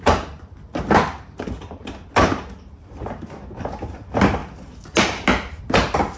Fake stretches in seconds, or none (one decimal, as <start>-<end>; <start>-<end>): none